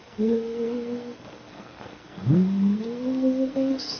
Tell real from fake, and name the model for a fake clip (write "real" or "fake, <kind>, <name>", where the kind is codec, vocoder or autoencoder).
fake, codec, SNAC